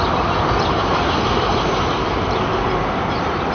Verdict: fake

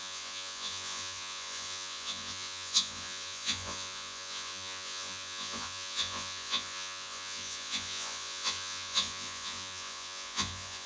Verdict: fake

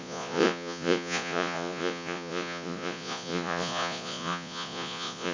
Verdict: fake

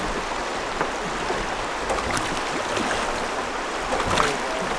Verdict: real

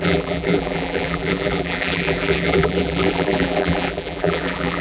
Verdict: fake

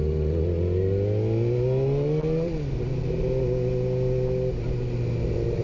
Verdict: real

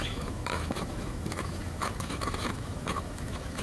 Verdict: fake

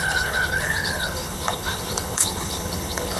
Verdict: fake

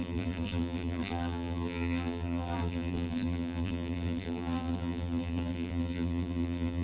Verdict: fake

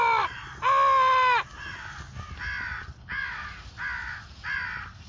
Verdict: real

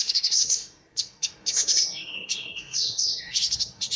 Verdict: fake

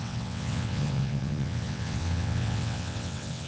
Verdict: fake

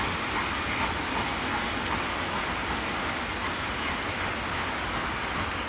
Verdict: real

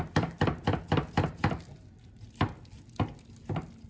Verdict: real